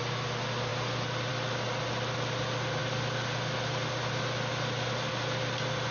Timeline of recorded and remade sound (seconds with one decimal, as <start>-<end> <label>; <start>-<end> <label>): 0.0-0.7 recorded; 0.7-1.3 remade; 1.3-2.8 recorded; 2.8-5.1 remade; 5.1-5.9 recorded